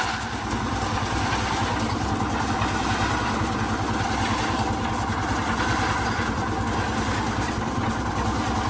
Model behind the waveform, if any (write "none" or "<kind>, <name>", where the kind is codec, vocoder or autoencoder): none